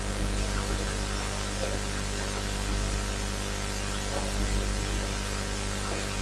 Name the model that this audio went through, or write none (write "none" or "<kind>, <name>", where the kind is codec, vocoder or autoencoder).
none